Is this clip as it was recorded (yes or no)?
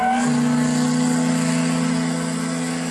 yes